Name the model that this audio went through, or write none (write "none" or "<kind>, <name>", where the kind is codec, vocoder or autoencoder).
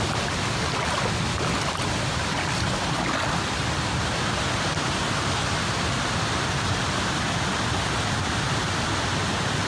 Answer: none